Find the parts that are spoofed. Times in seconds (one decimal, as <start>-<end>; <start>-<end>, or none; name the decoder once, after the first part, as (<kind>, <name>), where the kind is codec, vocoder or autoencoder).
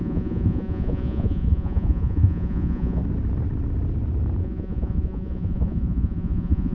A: 0.0-3.0 (vocoder, Vocos); 4.4-6.7